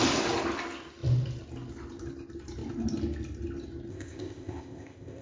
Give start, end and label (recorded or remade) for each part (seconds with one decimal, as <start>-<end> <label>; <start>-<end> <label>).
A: 0.0-3.9 recorded; 3.9-5.2 remade